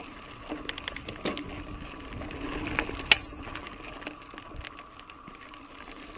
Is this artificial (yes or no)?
no